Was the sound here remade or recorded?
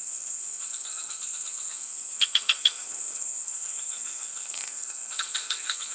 remade